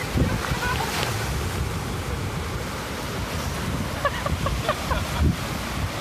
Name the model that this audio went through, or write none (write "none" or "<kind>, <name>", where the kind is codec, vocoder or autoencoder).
none